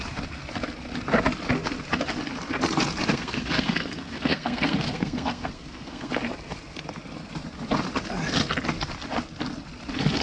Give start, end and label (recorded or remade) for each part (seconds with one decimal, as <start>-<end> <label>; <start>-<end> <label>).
0.0-3.1 recorded; 3.1-6.1 remade; 6.1-10.2 recorded

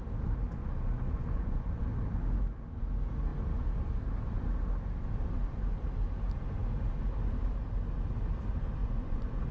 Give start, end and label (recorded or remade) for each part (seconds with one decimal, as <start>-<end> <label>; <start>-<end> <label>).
0.0-0.6 recorded; 0.6-1.8 remade; 1.8-8.8 recorded; 8.8-9.5 remade

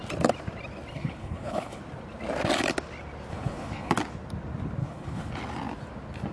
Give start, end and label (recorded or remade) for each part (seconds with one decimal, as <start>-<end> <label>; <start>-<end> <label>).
0.0-0.9 recorded; 0.9-1.8 remade; 1.8-3.3 recorded; 3.3-3.9 remade; 3.9-4.8 recorded; 4.8-5.3 remade; 5.3-6.3 recorded

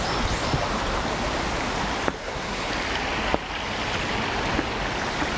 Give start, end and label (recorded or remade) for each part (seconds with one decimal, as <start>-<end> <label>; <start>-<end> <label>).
0.0-2.2 recorded; 2.2-2.7 remade; 2.7-5.4 recorded

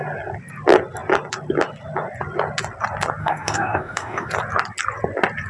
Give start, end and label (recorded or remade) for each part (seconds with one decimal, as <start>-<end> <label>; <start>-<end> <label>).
0.0-3.2 recorded; 3.2-4.3 remade; 4.3-5.5 recorded

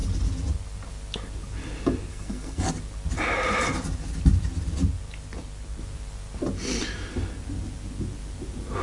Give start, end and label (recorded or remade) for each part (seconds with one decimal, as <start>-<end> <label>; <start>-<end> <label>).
0.0-2.1 recorded; 2.1-2.7 remade; 2.7-8.8 recorded

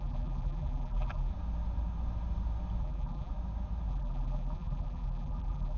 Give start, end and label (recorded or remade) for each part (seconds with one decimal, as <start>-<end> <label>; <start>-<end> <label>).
0.0-1.3 remade; 1.3-2.8 recorded; 2.8-3.3 remade; 3.3-3.9 recorded; 3.9-5.8 remade

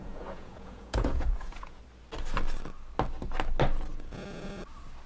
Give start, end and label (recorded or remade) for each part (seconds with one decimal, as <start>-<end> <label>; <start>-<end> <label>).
0.0-1.8 remade; 1.8-3.9 recorded; 3.9-4.6 remade; 4.6-5.1 recorded